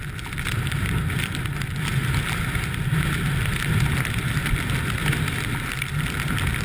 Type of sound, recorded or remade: recorded